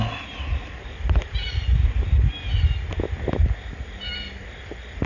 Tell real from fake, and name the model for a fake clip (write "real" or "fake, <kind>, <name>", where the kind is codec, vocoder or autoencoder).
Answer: real